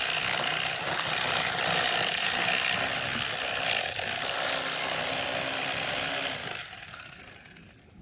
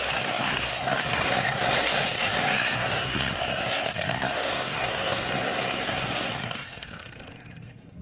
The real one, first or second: first